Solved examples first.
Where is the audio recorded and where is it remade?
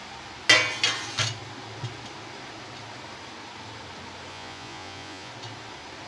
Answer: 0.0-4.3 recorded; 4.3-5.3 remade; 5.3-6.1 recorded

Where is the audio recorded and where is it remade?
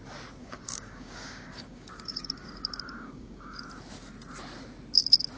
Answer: 0.0-0.4 recorded; 0.4-3.6 remade; 3.6-5.4 recorded